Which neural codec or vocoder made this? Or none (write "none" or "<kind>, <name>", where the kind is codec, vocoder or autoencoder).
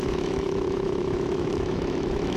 autoencoder, DAC-VAE